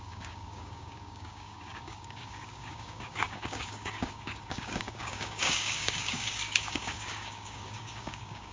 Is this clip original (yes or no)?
no